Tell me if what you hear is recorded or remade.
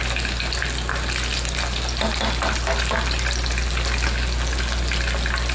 recorded